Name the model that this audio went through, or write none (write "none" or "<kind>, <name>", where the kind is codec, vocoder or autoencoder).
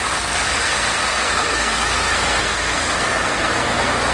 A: codec, SNAC